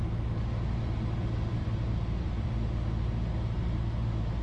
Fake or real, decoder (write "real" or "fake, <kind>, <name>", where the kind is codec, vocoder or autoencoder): real